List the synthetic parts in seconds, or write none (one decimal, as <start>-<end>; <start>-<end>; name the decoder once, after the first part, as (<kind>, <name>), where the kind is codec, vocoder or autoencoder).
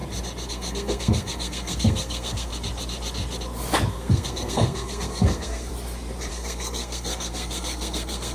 0.5-2.5 (codec, SNAC); 3.9-5.7; 6.3-8.3